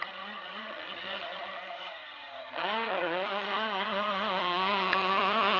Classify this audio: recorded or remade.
remade